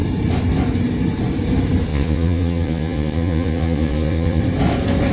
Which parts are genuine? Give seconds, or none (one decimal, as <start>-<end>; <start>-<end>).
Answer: 0.0-1.9; 4.4-5.1